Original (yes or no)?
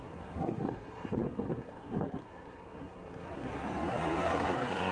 no